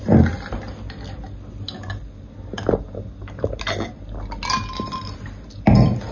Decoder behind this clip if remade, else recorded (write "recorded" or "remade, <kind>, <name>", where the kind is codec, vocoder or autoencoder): recorded